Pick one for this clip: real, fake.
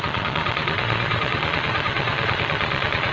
fake